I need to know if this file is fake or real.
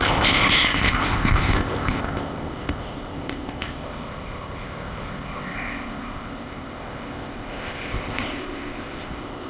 fake